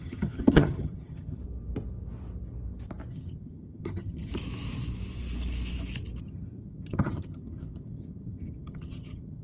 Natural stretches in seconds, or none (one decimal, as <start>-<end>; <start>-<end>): 1.4-3.1; 4.3-6.2

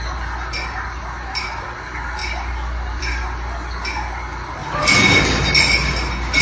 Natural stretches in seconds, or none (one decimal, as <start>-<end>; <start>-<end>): 0.0-6.4

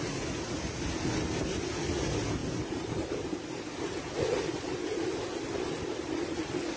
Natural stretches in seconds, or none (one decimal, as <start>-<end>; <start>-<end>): 0.0-2.4; 3.4-6.8

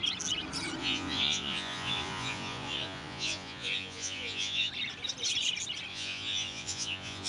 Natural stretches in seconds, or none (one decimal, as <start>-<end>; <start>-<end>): 0.0-0.8; 4.7-5.9

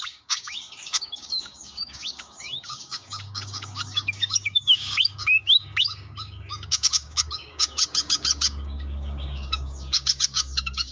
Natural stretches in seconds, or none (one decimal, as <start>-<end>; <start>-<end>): none

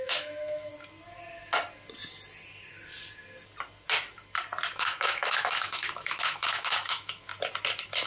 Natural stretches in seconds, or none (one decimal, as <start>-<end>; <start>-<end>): 0.7-4.7; 7.3-8.1